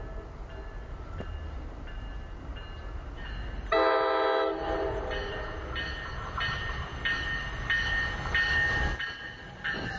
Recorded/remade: recorded